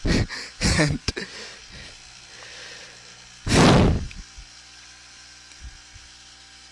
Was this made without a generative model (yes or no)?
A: yes